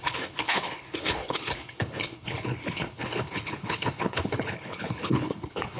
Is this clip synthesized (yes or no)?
yes